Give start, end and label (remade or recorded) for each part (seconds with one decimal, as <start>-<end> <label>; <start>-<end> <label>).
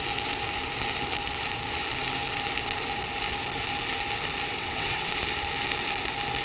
0.0-4.5 recorded; 4.5-5.1 remade; 5.1-6.4 recorded